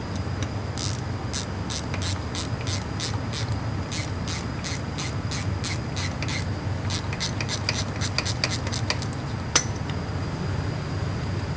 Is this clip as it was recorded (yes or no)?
yes